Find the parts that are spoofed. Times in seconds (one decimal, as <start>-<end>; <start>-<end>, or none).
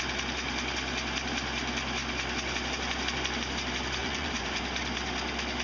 4.0-4.6